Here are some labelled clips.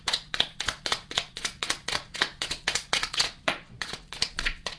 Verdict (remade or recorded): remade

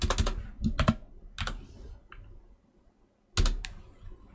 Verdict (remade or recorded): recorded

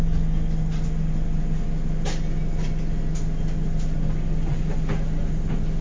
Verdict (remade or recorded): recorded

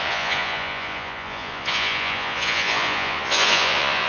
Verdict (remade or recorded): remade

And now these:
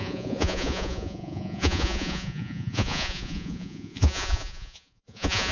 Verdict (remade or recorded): remade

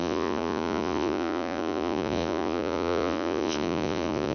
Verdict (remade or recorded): remade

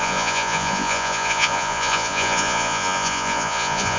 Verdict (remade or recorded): remade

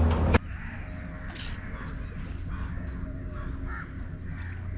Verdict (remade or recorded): recorded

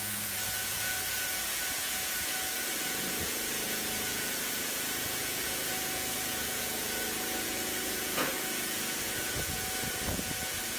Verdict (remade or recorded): remade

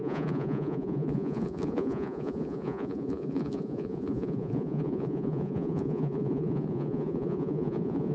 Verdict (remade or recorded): remade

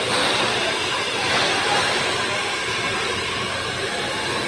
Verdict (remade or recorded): recorded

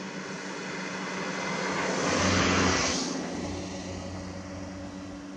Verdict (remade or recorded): recorded